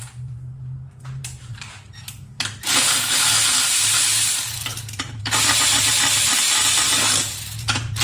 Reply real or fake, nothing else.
fake